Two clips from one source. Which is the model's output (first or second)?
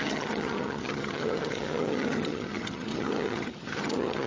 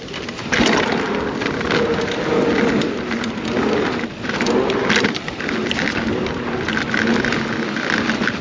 first